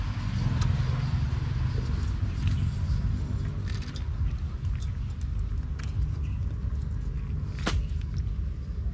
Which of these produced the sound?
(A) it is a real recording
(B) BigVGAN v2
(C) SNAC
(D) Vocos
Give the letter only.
A